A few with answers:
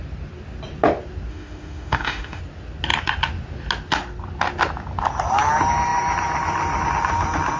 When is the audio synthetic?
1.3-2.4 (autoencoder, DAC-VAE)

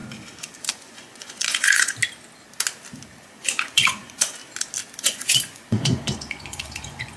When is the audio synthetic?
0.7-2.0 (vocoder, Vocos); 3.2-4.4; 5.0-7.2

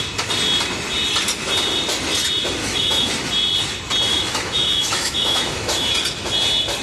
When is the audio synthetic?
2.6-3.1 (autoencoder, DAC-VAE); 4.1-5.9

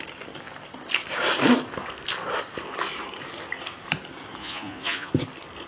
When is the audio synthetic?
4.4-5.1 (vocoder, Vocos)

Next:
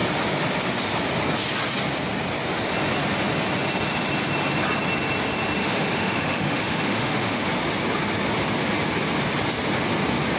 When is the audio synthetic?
5.6-7.4 (autoencoder, DAC-VAE)

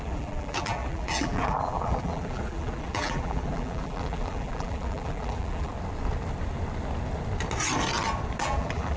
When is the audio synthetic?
0.0-5.7 (vocoder, BigVGAN v2); 8.4-9.0

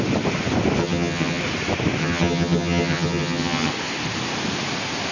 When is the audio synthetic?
0.8-1.4 (vocoder, HiFi-GAN); 2.0-3.7